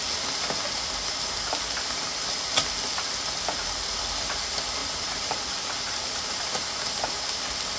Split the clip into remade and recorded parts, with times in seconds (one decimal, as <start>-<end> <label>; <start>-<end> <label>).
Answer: 0.0-4.8 recorded; 4.8-6.8 remade; 6.8-7.8 recorded